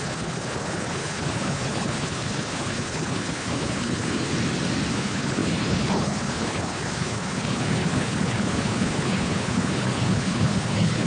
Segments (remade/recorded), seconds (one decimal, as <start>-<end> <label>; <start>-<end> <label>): 0.0-4.3 remade; 4.3-4.9 recorded; 4.9-11.1 remade